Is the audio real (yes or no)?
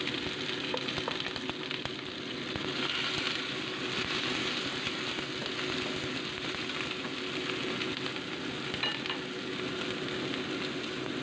yes